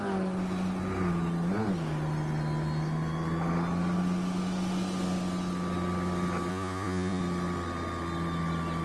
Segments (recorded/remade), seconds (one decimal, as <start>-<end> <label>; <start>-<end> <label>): 0.0-6.5 recorded; 6.5-7.2 remade; 7.2-8.8 recorded